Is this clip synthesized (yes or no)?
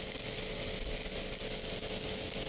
no